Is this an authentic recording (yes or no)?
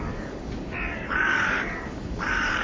no